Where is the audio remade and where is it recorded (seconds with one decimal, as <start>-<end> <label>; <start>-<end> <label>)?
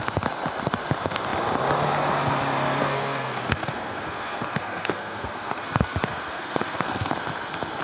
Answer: 0.0-2.8 recorded; 2.8-7.1 remade; 7.1-7.8 recorded